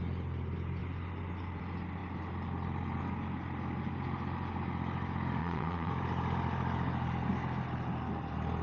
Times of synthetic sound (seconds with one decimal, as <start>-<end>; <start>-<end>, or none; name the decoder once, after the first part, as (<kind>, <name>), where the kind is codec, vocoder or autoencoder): 5.4-5.9 (vocoder, Vocos)